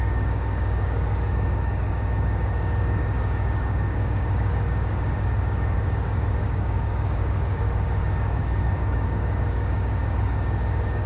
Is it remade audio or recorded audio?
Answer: remade